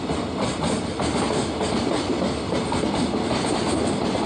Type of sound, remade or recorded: recorded